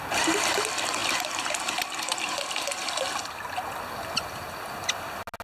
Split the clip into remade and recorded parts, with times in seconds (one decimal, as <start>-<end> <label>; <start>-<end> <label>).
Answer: 0.0-5.4 recorded